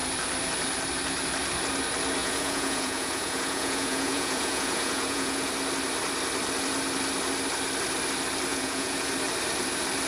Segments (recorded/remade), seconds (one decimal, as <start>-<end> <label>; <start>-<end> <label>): 0.0-2.2 recorded; 2.2-5.5 remade; 5.5-8.5 recorded; 8.5-9.1 remade; 9.1-10.1 recorded

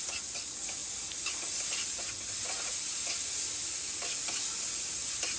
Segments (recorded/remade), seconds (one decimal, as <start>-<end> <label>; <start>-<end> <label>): 0.0-5.4 recorded